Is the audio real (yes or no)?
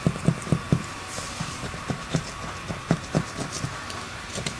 yes